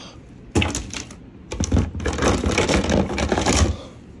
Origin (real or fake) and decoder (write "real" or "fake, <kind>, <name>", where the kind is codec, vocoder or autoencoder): real